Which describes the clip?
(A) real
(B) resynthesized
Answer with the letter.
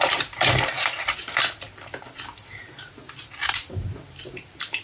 B